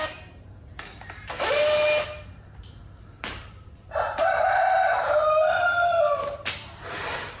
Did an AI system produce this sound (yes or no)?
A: yes